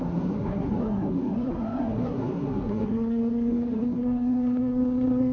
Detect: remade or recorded remade